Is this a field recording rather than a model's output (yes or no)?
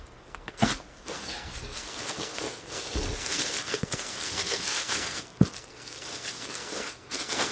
no